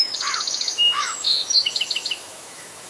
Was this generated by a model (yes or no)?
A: yes